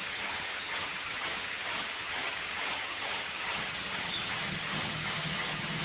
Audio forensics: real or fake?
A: fake